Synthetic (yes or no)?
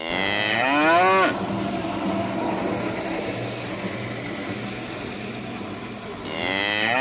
no